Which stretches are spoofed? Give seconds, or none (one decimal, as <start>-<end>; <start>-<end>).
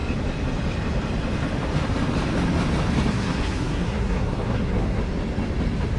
3.1-5.0